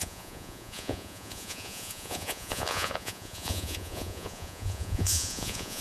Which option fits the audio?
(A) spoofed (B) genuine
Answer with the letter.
A